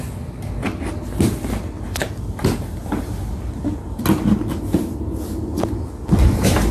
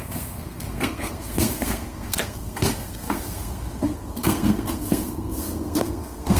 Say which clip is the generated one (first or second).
second